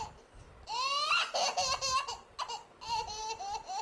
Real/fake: real